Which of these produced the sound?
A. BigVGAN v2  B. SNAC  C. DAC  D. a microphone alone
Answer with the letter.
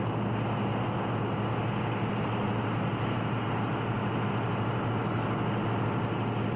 D